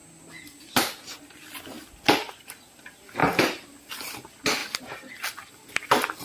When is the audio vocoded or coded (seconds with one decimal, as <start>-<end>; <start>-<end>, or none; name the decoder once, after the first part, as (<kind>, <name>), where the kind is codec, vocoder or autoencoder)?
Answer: 3.2-3.9 (vocoder, BigVGAN v2)